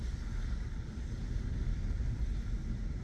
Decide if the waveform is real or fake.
real